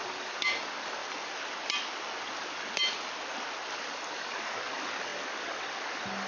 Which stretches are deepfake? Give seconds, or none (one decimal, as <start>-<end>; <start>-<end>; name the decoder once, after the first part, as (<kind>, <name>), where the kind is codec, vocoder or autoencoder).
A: 0.0-1.0 (codec, DAC); 3.9-6.3